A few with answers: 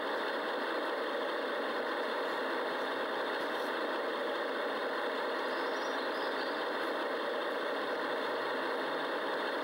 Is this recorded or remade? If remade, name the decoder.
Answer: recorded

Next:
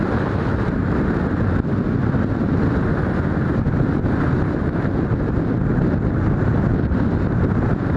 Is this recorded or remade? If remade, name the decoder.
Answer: recorded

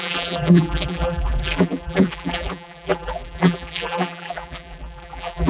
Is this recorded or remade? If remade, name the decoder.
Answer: remade, vocoder, BigVGAN v2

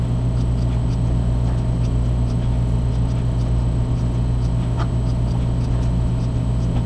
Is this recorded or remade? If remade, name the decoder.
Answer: recorded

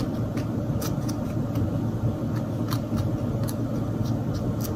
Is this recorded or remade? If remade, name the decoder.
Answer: recorded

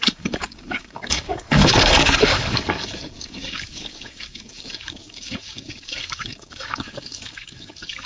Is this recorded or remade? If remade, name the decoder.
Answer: remade, codec, DAC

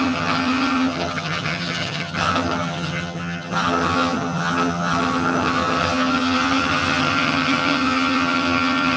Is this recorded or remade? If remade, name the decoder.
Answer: remade, vocoder, HiFi-GAN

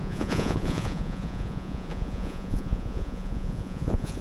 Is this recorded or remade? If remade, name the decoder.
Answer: remade, vocoder, Vocos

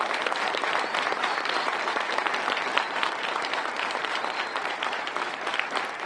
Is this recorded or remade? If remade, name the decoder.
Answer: remade, vocoder, BigVGAN v2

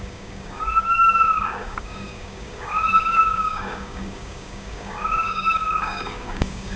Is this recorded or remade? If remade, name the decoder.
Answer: remade, codec, DAC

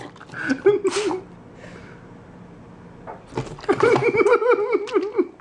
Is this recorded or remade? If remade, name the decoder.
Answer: recorded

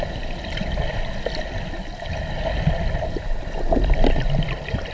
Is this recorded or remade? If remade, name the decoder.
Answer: recorded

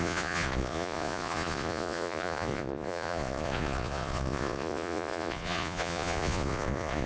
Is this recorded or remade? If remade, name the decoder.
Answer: remade, vocoder, Vocos